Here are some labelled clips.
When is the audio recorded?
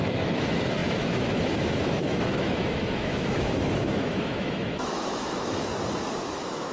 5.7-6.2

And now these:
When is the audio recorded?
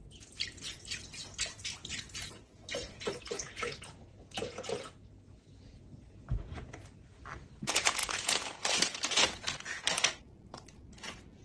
6.8-7.4